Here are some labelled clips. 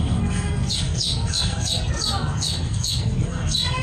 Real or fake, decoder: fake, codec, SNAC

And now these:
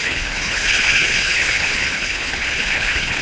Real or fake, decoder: fake, codec, HILCodec